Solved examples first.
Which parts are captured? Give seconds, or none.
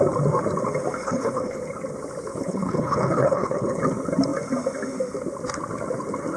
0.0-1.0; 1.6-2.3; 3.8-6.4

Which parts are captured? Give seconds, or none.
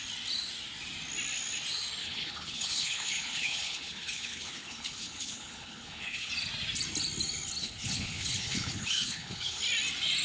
0.0-2.0; 6.3-7.6; 9.6-10.2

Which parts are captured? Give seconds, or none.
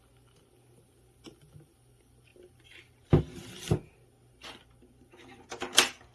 0.0-6.1